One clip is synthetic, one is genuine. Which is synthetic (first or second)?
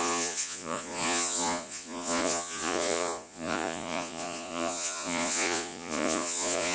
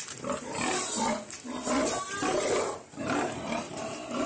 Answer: first